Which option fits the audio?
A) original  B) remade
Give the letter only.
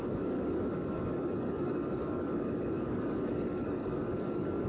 B